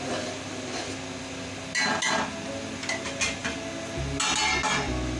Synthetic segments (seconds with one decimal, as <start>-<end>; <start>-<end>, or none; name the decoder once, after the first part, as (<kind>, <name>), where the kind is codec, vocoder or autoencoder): none